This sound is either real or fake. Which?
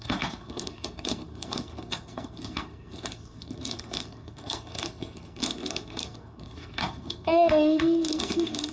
fake